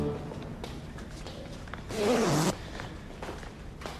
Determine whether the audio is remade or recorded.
recorded